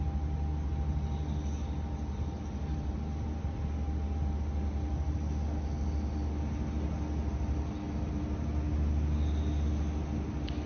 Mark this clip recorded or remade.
recorded